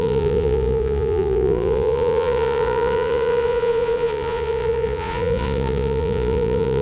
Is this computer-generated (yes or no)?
yes